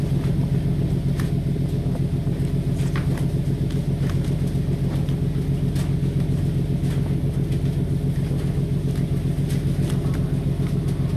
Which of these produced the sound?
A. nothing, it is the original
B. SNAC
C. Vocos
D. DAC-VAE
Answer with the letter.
A